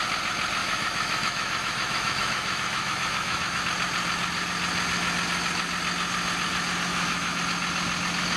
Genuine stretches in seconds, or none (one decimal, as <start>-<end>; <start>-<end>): 0.0-0.6; 3.6-6.9; 7.4-8.4